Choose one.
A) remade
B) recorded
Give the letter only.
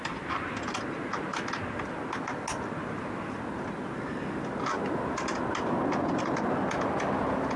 B